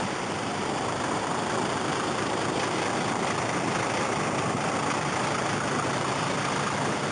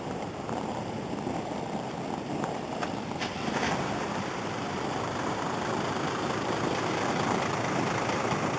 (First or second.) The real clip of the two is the first